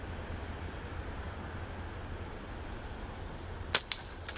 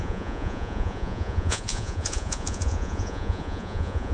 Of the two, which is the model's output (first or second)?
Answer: second